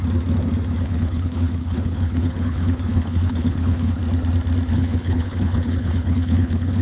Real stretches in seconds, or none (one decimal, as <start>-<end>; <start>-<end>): 0.0-0.8; 4.0-4.7

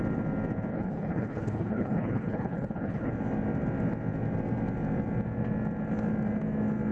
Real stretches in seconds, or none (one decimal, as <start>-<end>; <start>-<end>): 0.0-0.7; 3.1-6.9

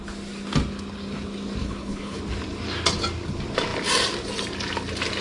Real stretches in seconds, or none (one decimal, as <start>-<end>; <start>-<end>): 0.0-1.6; 2.2-5.2

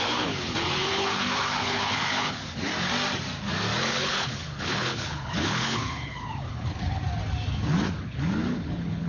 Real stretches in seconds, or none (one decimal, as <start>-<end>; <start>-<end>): 2.7-3.8; 7.0-8.0

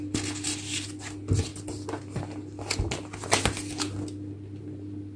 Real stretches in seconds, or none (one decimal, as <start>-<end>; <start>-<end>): 0.0-5.2

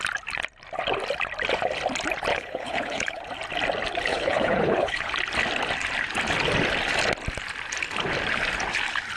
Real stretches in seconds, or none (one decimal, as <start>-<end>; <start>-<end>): 0.0-2.3; 3.2-4.1; 5.1-9.2

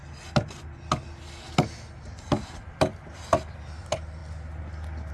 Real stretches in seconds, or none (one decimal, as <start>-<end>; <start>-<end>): 0.0-5.1